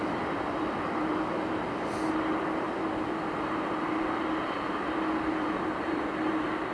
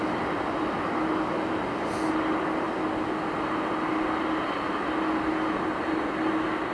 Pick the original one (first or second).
second